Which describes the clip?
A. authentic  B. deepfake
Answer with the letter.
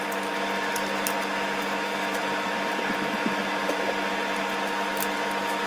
A